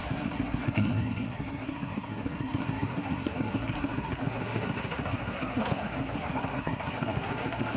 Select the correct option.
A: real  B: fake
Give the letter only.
B